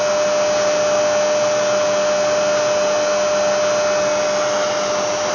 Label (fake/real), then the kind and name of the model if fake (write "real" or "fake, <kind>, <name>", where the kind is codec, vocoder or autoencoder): real